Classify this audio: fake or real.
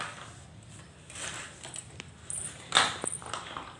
real